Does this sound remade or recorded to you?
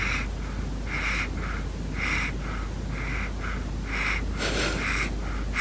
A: recorded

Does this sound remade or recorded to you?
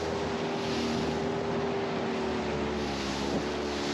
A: recorded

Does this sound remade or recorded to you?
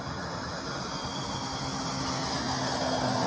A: recorded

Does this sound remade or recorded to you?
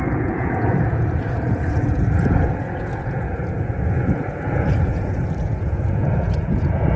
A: remade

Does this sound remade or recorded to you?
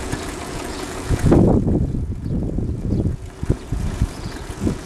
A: remade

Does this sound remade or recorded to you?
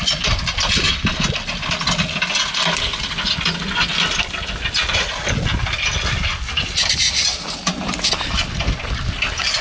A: recorded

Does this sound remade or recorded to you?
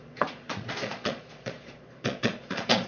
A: remade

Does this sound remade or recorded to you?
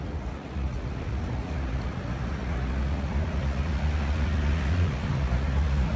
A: remade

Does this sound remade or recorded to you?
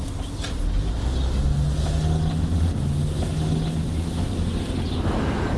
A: recorded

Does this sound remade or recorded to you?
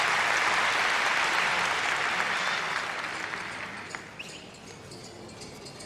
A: recorded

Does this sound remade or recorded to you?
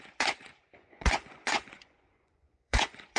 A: remade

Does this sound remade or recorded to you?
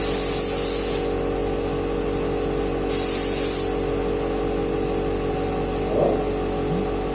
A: recorded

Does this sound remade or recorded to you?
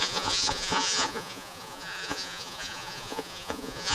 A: remade